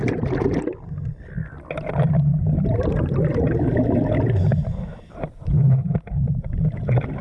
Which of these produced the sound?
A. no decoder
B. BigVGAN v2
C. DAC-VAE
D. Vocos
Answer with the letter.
A